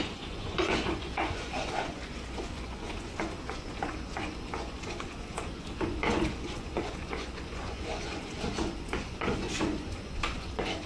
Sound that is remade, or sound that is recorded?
remade